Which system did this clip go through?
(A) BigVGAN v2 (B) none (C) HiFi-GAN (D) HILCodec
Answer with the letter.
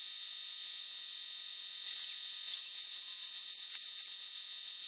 B